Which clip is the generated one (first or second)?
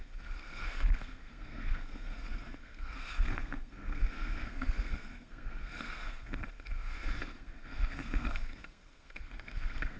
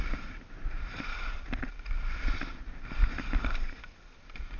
first